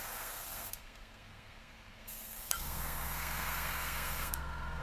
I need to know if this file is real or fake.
fake